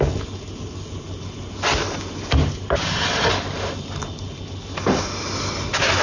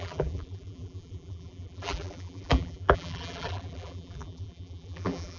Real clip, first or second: first